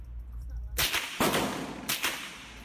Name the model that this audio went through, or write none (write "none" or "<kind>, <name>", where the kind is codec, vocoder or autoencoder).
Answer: none